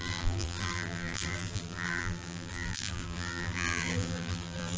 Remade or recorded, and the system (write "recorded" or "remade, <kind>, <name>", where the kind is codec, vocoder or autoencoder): remade, vocoder, BigVGAN v2